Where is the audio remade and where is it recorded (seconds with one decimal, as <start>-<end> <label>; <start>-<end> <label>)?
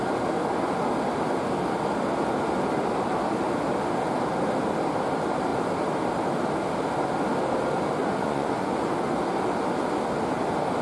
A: 0.0-8.0 recorded; 8.0-8.9 remade; 8.9-10.8 recorded